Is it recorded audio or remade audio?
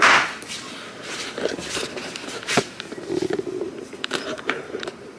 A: remade